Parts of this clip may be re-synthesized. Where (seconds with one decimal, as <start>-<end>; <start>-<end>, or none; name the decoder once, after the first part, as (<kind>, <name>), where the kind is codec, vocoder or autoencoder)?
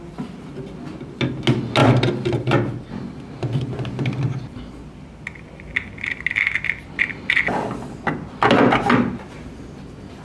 none